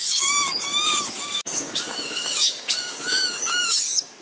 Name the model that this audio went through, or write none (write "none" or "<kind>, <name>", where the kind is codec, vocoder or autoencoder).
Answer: codec, DAC